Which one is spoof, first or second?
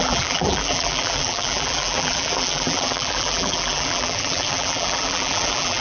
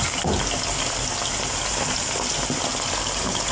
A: first